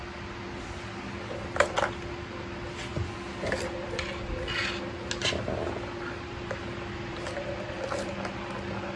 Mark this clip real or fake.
real